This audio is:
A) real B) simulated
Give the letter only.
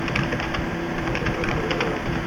B